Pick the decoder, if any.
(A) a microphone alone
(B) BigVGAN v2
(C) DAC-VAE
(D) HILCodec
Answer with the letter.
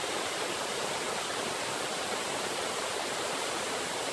A